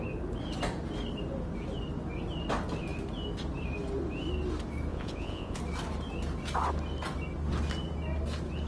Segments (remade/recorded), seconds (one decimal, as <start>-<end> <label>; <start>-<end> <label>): 0.0-4.9 recorded; 4.9-5.6 remade; 5.6-8.7 recorded

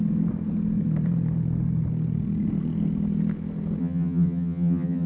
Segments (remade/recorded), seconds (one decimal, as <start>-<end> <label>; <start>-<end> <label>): 0.0-3.8 recorded; 3.8-5.1 remade